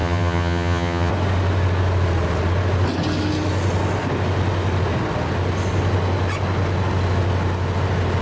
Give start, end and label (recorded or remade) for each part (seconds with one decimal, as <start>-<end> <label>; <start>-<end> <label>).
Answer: 0.0-1.1 remade; 1.1-8.2 recorded

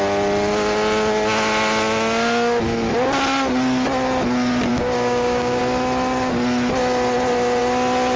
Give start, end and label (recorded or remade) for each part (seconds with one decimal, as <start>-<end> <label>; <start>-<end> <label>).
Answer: 0.0-4.7 recorded; 4.7-5.6 remade; 5.6-8.2 recorded